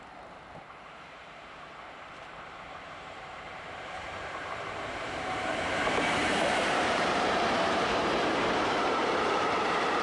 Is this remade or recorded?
remade